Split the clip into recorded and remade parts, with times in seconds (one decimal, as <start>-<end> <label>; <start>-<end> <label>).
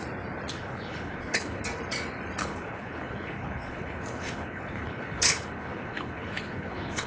0.0-0.5 recorded; 0.5-1.6 remade; 1.6-2.4 recorded; 2.4-7.1 remade